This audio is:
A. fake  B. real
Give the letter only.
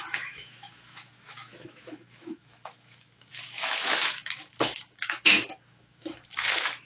A